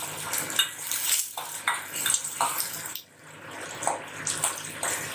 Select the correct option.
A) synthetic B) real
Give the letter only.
B